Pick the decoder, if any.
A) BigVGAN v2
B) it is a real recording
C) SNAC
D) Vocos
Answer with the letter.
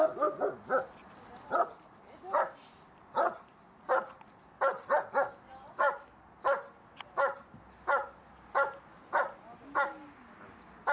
B